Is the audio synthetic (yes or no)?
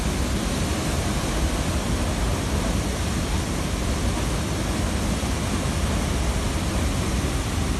no